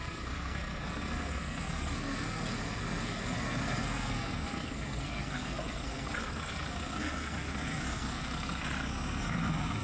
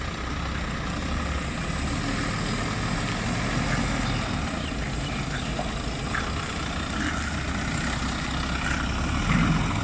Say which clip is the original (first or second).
second